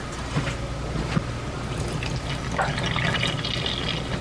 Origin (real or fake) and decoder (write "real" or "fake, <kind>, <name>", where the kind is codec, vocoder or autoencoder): real